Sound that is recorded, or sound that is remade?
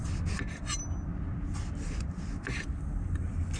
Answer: recorded